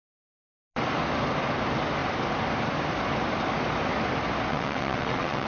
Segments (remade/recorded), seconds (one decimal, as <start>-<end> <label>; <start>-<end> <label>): 0.0-4.5 recorded; 4.5-5.5 remade